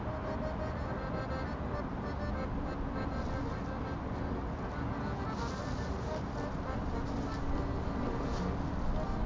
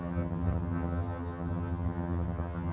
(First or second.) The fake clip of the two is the second